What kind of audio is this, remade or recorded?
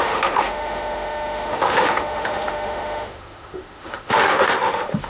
remade